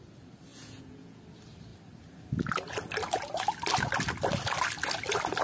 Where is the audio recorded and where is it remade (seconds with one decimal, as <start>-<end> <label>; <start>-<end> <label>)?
0.0-0.5 recorded; 0.5-1.2 remade; 1.2-5.4 recorded